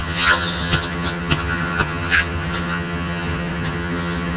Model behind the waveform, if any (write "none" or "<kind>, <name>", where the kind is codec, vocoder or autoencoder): vocoder, HiFi-GAN